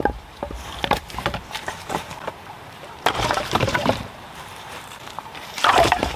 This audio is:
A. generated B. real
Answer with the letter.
A